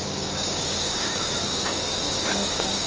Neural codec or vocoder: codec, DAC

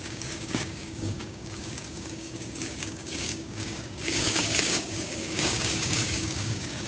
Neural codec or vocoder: codec, DAC